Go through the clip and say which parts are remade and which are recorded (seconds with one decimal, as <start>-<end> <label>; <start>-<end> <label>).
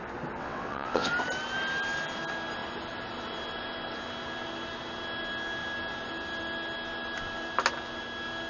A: 0.0-0.4 recorded; 0.4-1.1 remade; 1.1-8.5 recorded